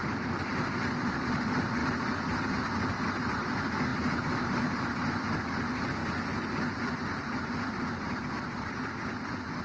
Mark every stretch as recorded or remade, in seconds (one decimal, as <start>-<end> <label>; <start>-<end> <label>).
0.0-1.1 remade; 1.1-3.9 recorded; 3.9-4.5 remade; 4.5-9.6 recorded